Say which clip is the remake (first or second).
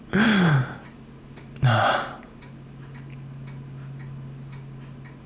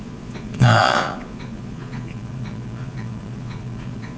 second